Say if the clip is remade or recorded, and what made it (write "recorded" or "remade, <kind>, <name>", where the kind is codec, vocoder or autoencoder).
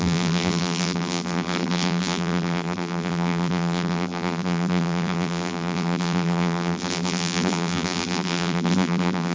remade, vocoder, BigVGAN v2